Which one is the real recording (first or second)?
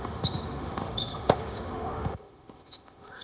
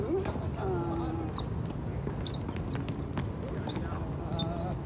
second